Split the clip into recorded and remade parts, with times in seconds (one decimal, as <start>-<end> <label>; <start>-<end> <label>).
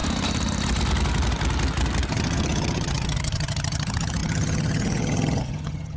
0.0-2.1 recorded; 2.1-6.0 remade